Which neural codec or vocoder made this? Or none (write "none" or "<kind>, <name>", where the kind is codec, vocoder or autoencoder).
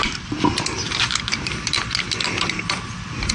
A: vocoder, BigVGAN v2